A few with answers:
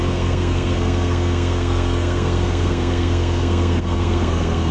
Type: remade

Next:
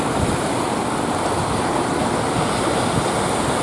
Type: recorded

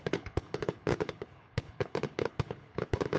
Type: remade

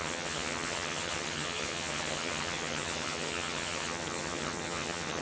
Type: remade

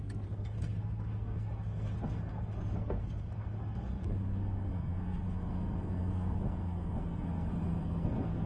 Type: remade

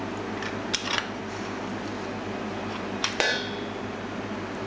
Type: recorded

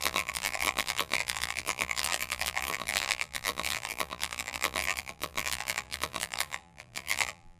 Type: remade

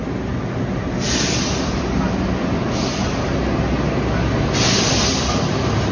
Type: recorded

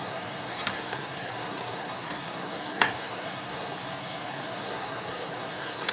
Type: remade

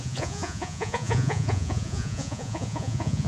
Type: remade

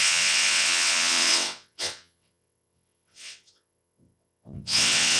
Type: remade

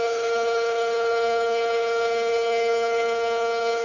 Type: remade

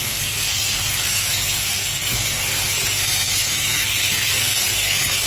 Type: remade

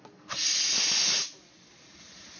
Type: recorded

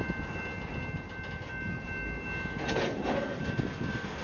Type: recorded